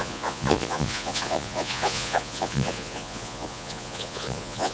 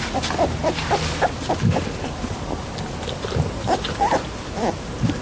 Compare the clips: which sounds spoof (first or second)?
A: first